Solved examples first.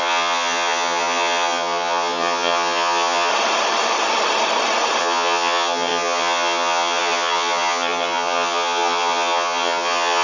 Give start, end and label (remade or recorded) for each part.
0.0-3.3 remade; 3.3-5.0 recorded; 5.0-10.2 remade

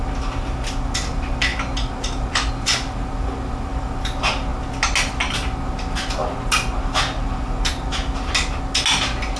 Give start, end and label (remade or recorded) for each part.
0.0-9.4 recorded

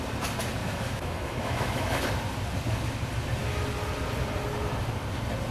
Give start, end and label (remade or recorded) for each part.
0.0-0.6 recorded; 0.6-2.0 remade; 2.0-5.5 recorded

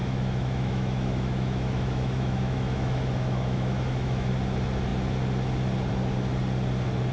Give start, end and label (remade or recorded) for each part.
0.0-4.3 remade; 4.3-7.1 recorded

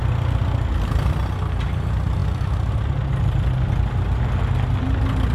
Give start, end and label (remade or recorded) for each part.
0.0-5.3 recorded

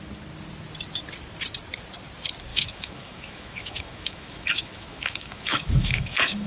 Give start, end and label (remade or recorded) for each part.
0.0-2.5 recorded; 2.5-6.5 remade

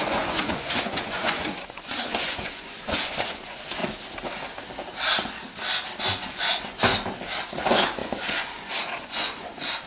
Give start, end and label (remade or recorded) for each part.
0.0-3.8 remade; 3.8-6.0 recorded; 6.0-6.9 remade; 6.9-7.5 recorded; 7.5-9.9 remade

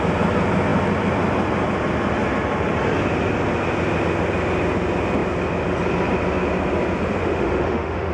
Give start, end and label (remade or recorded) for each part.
0.0-7.2 recorded; 7.2-8.1 remade